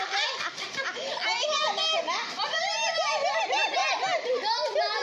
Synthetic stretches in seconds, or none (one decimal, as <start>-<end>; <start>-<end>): none

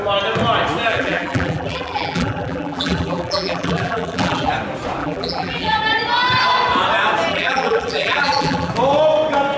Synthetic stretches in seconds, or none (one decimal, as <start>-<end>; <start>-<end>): 0.9-4.5; 5.0-5.8; 7.3-8.7

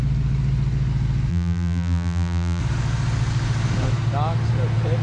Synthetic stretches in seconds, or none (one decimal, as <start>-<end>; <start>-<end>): 1.3-2.6

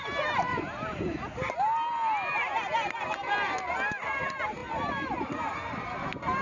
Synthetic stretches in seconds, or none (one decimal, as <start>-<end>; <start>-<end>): none

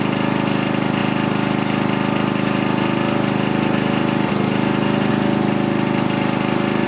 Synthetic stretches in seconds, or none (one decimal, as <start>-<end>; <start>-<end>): none